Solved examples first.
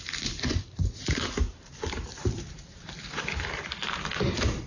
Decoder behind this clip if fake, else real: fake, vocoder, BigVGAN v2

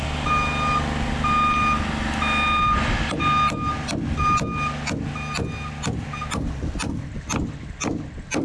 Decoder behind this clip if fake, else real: real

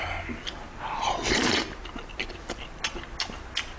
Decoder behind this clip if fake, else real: real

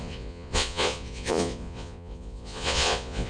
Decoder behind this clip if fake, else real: fake, vocoder, Vocos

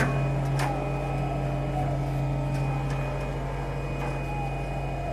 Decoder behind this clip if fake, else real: real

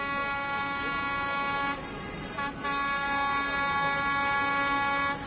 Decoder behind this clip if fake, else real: real